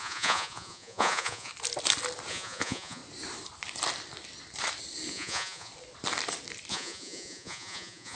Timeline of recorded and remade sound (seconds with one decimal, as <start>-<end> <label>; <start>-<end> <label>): 0.0-1.5 remade; 1.5-2.3 recorded; 2.3-3.0 remade; 3.0-5.1 recorded; 5.1-5.7 remade; 5.7-6.7 recorded; 6.7-8.2 remade